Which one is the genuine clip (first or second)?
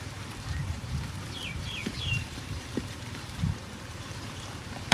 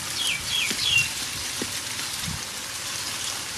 second